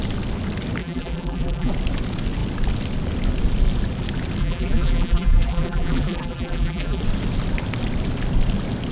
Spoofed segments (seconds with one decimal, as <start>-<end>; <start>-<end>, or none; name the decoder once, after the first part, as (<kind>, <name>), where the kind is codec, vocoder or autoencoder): 0.8-1.7 (vocoder, BigVGAN v2); 4.4-7.0